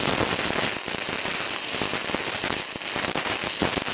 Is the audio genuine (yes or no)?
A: yes